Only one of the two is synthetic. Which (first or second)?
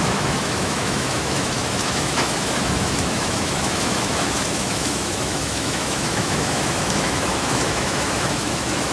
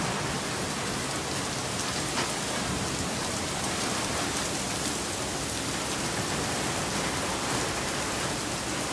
first